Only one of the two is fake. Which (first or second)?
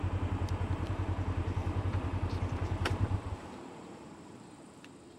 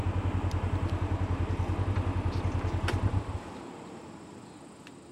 first